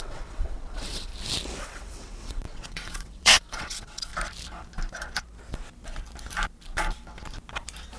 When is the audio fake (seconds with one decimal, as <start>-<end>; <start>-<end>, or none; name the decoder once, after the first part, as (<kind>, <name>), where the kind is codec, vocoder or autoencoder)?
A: 0.0-1.1 (vocoder, WaveNeXt); 1.6-4.1